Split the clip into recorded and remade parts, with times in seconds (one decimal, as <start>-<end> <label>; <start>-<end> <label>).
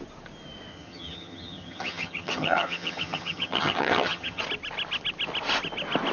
0.0-0.7 recorded; 0.7-4.4 remade; 4.4-6.1 recorded